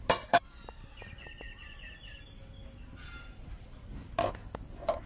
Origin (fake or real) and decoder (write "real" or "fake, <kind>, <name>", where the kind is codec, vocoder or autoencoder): real